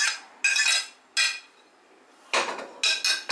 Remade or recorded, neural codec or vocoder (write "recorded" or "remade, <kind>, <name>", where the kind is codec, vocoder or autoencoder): recorded